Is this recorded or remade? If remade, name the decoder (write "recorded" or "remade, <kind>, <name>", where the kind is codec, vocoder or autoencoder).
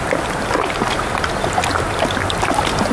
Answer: recorded